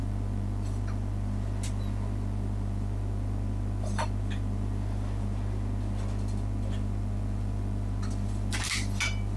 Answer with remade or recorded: recorded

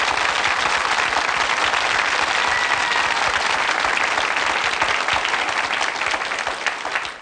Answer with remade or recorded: recorded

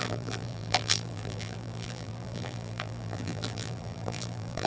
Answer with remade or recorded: remade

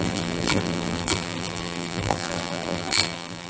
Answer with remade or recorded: remade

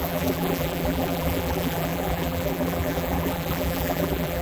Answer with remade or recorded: remade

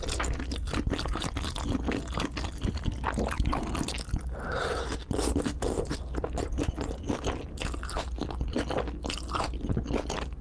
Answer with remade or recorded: recorded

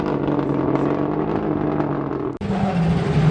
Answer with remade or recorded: recorded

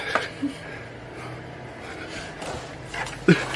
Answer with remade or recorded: recorded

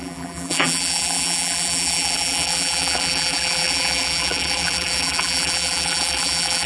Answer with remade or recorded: remade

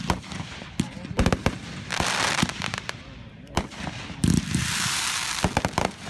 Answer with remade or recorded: remade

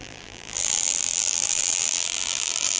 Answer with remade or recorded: remade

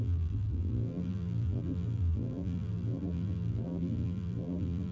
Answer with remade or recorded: remade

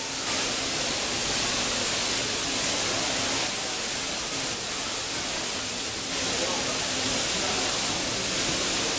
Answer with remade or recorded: recorded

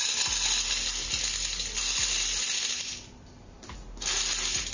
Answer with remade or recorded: recorded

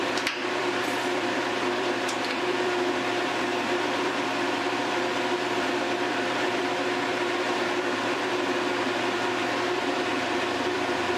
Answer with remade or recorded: remade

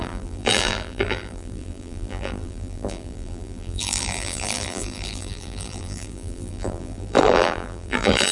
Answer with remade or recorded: remade